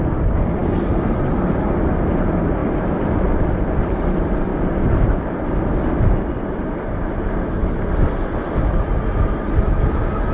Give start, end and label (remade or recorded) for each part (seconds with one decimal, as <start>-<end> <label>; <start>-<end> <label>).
0.0-10.3 recorded